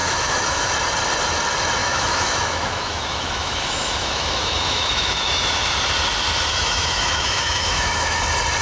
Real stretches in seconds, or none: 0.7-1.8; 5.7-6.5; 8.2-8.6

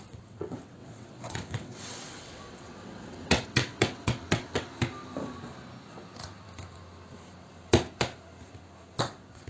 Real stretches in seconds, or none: 4.7-9.0

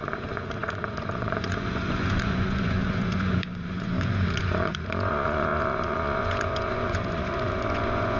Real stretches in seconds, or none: none

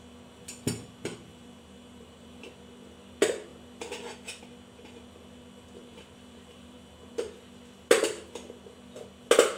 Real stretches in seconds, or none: 0.0-1.3; 2.5-5.8; 7.1-9.6